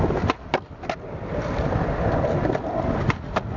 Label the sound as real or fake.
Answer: real